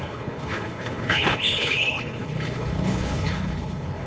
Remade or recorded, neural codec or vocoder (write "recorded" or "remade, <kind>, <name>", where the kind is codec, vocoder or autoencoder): remade, codec, HILCodec